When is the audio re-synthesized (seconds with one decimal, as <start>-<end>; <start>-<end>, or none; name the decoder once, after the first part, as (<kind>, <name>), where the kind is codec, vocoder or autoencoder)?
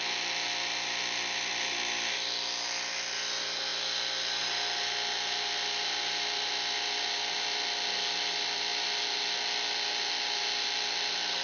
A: none